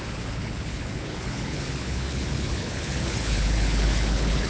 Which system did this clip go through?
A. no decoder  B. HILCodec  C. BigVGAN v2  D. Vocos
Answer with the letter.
B